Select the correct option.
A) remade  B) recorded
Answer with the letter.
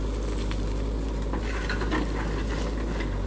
B